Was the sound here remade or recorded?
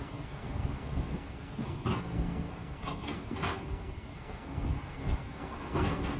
remade